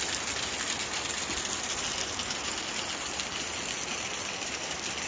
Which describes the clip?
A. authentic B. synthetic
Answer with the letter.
A